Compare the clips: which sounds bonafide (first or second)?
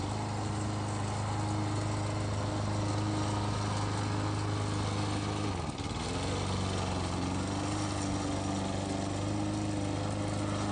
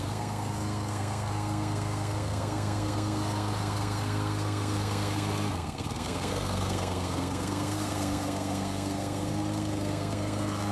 first